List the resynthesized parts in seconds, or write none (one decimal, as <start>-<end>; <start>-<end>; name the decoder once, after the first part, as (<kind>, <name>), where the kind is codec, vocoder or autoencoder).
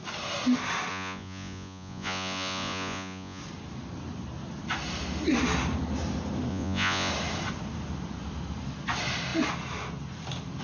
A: 0.9-3.4 (vocoder, Vocos); 6.5-7.1